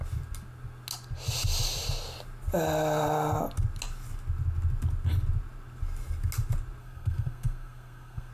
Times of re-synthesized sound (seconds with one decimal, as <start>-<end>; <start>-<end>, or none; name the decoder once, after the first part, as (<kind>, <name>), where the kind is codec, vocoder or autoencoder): 6.8-8.3 (codec, SNAC)